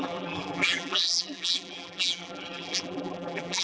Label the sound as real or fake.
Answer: fake